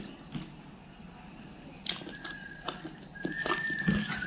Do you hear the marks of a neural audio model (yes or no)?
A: no